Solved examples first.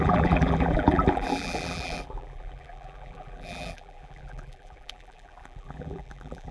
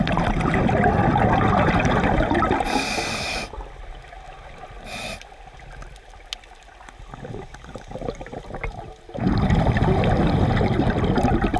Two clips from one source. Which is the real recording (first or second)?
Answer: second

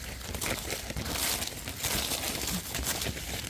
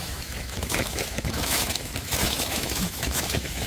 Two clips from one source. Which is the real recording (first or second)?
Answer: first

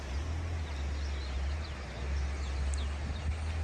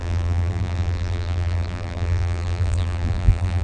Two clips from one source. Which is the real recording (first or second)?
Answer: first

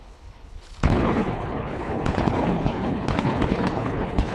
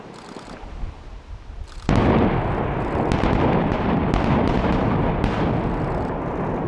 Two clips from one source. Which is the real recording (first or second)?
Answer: second